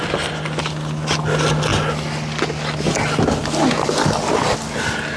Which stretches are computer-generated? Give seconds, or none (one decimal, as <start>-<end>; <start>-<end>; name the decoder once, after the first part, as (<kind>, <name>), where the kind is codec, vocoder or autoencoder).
none